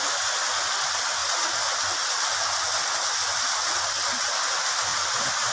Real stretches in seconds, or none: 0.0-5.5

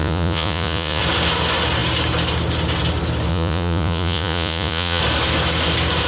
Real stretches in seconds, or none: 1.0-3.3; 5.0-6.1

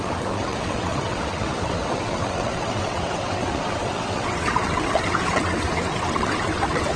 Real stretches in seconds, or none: none